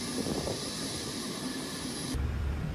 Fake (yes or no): no